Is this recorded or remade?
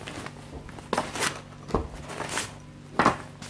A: recorded